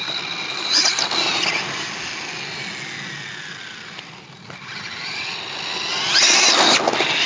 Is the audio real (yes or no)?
yes